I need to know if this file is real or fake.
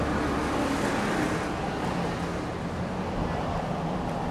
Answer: real